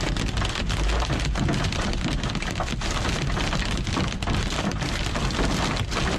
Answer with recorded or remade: recorded